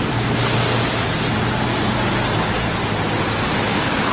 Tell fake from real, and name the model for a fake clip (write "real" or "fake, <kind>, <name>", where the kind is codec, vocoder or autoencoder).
real